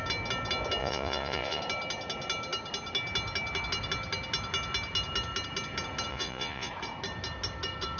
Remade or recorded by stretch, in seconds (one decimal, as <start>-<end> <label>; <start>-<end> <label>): 0.0-0.8 recorded; 0.8-1.6 remade; 1.6-6.1 recorded; 6.1-6.7 remade; 6.7-8.0 recorded